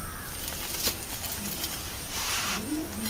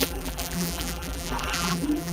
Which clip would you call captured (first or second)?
first